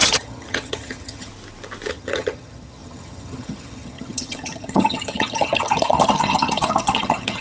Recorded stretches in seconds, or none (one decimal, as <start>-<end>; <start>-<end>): 1.3-1.9